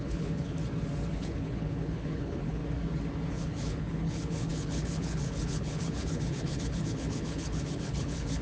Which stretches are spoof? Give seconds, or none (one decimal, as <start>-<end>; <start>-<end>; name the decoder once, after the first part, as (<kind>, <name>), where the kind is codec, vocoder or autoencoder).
0.0-0.6 (codec, HILCodec); 1.1-2.6; 3.3-8.4